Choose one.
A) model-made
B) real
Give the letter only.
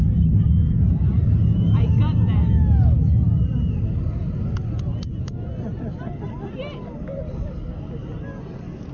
B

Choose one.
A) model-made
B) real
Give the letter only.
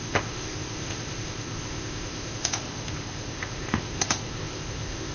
A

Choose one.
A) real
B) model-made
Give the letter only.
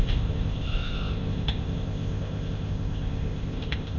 B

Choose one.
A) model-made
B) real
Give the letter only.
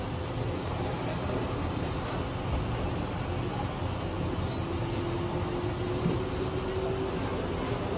B